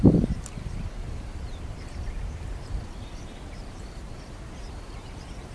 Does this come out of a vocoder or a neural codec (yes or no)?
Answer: yes